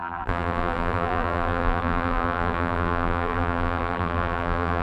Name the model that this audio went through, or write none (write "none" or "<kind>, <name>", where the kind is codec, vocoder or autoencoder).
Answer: vocoder, BigVGAN v2